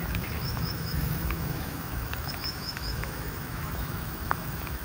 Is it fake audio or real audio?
fake